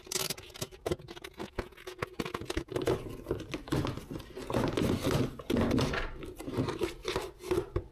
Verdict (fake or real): real